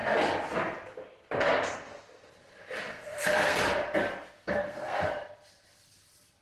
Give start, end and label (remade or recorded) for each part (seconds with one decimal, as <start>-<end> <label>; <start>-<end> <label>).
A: 0.0-2.9 recorded; 2.9-3.6 remade; 3.6-4.4 recorded; 4.4-5.1 remade; 5.1-6.4 recorded